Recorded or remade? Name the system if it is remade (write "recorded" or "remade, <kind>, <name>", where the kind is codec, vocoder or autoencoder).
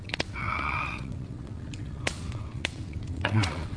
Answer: remade, vocoder, WaveNeXt